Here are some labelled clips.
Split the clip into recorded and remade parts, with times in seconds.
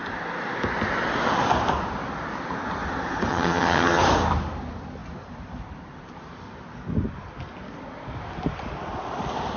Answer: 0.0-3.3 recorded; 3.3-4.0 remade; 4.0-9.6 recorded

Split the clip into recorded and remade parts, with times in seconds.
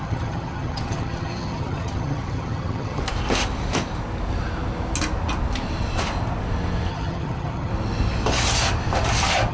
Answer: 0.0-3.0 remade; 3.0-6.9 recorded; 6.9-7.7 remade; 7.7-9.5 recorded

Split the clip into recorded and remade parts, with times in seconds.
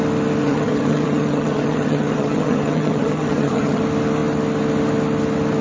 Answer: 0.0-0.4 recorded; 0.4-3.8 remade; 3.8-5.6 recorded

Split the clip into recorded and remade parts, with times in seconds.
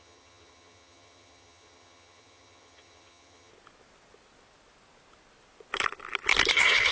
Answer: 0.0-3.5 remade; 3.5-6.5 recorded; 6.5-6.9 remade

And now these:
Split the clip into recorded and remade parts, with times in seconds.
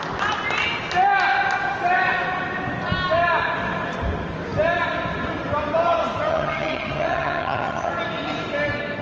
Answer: 0.0-6.3 recorded; 6.3-7.9 remade; 7.9-9.0 recorded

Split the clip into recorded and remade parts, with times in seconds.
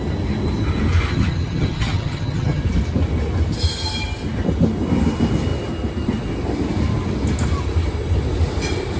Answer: 0.0-1.1 recorded; 1.1-2.6 remade; 2.6-9.0 recorded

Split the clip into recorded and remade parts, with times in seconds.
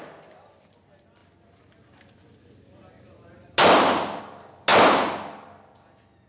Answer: 0.0-6.3 recorded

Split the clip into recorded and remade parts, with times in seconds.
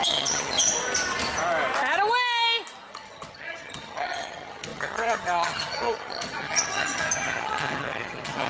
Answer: 0.0-0.7 remade; 0.7-2.9 recorded; 2.9-8.5 remade